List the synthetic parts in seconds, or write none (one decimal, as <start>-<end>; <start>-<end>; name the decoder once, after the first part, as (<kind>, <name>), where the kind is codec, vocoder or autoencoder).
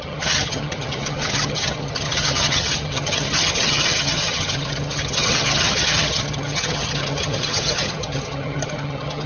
0.0-9.3 (vocoder, HiFi-GAN)